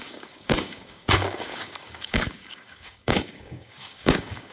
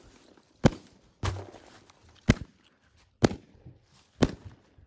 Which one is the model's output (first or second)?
first